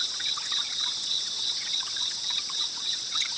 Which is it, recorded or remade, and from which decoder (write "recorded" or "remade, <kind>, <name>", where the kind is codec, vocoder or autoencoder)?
remade, vocoder, WaveNeXt